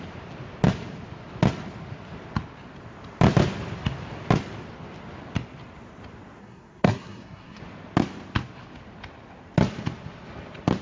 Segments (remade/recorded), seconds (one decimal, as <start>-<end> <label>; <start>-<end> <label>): 0.0-6.4 recorded; 6.4-7.6 remade; 7.6-10.8 recorded